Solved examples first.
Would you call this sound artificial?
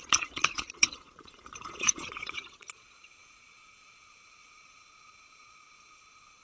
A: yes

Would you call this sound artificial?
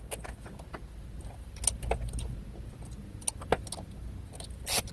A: no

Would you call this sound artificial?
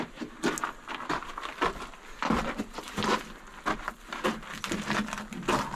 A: no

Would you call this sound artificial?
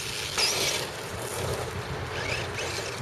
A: no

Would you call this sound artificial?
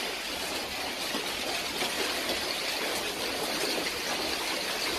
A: no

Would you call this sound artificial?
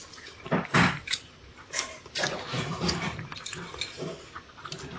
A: no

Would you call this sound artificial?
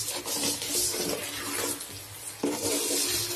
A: no